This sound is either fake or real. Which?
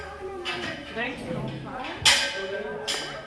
real